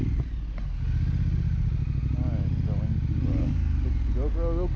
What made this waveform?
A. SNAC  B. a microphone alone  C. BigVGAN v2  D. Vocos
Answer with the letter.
B